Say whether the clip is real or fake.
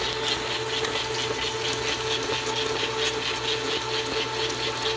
real